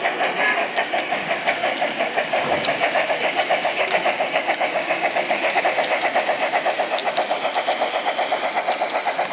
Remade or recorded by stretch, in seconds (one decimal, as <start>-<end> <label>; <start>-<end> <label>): 0.0-0.6 recorded; 0.6-5.6 remade; 5.6-9.3 recorded